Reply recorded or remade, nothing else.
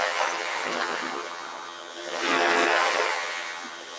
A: remade